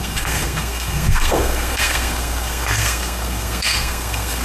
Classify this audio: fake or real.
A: fake